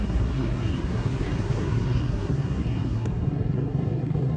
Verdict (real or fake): fake